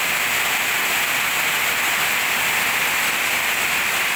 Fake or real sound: real